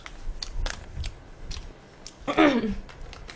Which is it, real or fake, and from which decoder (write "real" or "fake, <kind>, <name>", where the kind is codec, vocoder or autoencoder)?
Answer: real